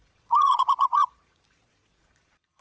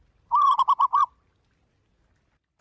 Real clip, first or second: second